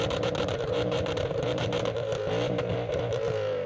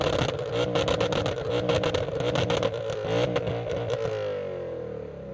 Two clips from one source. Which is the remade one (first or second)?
first